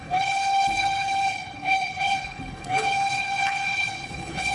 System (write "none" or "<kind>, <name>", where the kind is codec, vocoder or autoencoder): codec, HILCodec